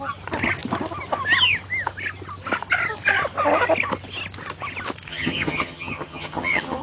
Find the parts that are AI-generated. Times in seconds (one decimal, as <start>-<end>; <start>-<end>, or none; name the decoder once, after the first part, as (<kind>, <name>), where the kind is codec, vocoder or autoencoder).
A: 5.1-6.8 (vocoder, HiFi-GAN)